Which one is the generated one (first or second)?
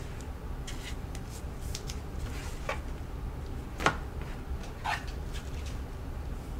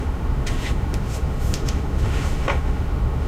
second